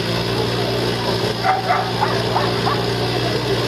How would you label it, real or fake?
real